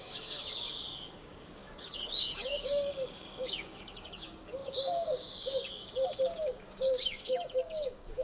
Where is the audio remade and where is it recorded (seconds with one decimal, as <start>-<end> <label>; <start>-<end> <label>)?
0.0-8.2 remade

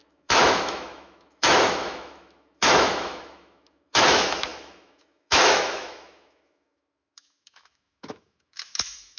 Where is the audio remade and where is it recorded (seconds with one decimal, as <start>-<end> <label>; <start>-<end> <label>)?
0.0-9.2 remade

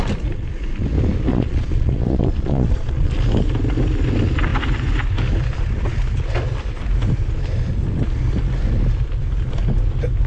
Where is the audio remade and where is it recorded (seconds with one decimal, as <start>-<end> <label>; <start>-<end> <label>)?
0.0-1.3 recorded; 1.3-3.2 remade; 3.2-10.3 recorded

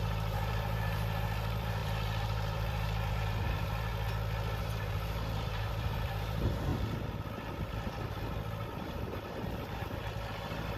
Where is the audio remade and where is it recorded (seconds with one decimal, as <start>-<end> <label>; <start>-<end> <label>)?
0.0-3.9 remade; 3.9-4.6 recorded; 4.6-6.7 remade; 6.7-8.8 recorded; 8.8-10.8 remade

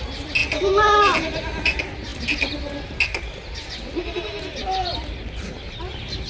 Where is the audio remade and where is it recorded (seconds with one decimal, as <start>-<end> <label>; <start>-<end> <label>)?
0.0-6.3 recorded

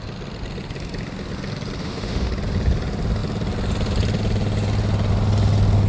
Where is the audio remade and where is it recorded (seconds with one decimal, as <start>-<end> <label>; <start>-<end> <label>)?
0.0-1.8 recorded; 1.8-2.3 remade; 2.3-5.9 recorded

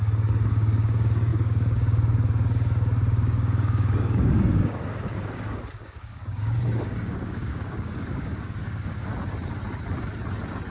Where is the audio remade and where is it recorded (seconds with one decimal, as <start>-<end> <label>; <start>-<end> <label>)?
0.0-9.1 remade; 9.1-10.7 recorded